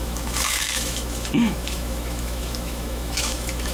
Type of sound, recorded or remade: remade